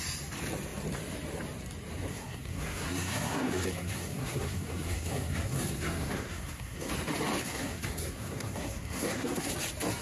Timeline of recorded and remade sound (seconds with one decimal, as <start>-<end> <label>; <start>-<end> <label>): 0.0-2.1 recorded; 2.1-6.9 remade; 6.9-7.4 recorded; 7.4-9.5 remade; 9.5-10.0 recorded